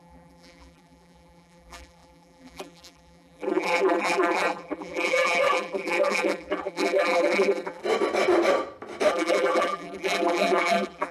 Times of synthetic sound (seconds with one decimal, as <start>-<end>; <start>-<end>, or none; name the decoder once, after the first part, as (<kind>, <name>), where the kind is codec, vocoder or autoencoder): 0.0-7.8 (vocoder, BigVGAN v2); 9.1-11.1

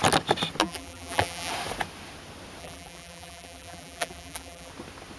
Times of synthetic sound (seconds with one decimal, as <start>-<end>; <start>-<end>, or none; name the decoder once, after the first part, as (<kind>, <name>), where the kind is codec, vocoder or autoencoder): 0.6-1.5 (vocoder, BigVGAN v2); 2.6-4.7

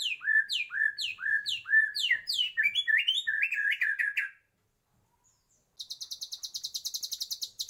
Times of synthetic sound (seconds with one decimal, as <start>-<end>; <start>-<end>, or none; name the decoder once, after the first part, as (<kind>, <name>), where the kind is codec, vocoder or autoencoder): 1.1-4.0 (vocoder, BigVGAN v2)

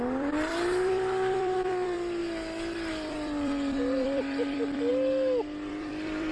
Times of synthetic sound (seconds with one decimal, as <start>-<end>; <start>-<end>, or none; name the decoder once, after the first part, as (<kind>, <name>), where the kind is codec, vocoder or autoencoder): 0.0-2.2 (vocoder, BigVGAN v2); 2.9-4.9; 5.7-6.3